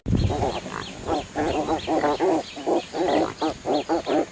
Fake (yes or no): no